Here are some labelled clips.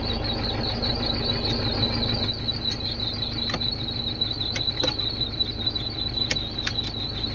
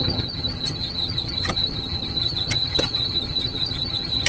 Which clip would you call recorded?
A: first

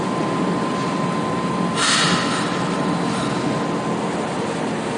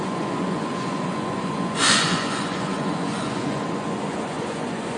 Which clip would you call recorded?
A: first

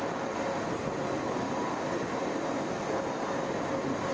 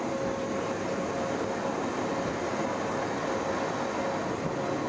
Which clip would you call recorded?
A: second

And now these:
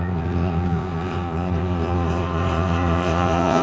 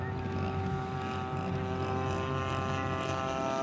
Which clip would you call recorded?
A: second